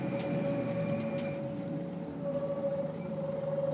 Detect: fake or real real